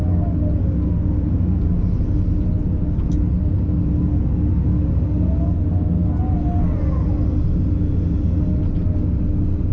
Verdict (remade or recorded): recorded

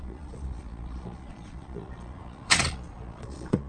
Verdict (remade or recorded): remade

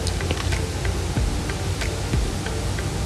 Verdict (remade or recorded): recorded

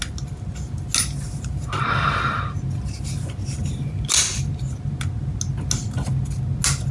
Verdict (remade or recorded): recorded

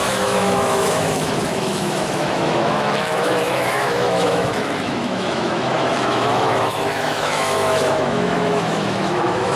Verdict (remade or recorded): remade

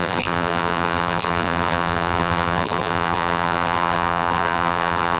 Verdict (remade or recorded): remade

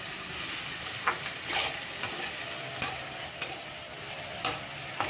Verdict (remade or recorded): recorded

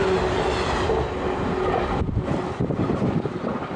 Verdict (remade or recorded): remade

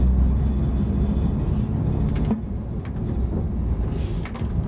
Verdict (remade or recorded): recorded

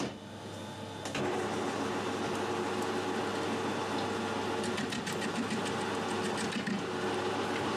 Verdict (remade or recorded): recorded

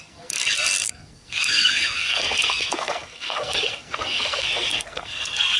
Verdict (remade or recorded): remade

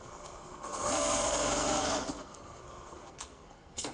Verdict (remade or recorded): remade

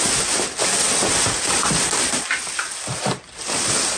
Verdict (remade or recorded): recorded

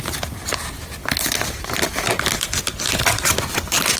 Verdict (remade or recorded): recorded